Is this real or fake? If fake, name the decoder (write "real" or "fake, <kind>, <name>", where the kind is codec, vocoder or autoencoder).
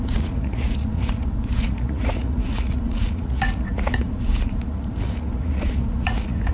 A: fake, vocoder, Vocos